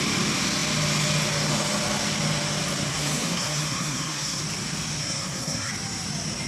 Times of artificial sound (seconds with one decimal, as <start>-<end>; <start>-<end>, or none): 2.9-4.4; 5.0-5.7